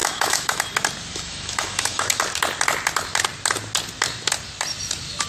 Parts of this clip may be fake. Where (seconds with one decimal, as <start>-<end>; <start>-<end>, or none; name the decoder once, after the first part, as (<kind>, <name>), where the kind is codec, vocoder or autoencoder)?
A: 0.0-0.6 (autoencoder, DAC-VAE); 1.1-2.2